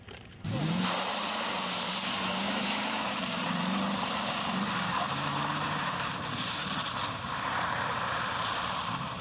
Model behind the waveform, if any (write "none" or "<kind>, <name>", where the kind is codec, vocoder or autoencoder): vocoder, BigVGAN v2